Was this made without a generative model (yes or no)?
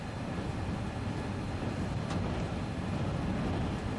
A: yes